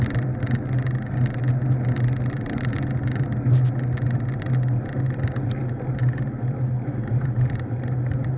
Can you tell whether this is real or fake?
real